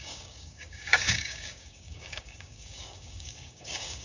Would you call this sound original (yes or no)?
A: no